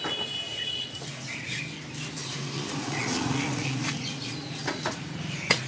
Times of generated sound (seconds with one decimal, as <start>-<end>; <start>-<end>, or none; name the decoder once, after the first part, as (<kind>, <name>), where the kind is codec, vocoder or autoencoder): 0.5-1.6 (vocoder, Vocos); 2.2-5.7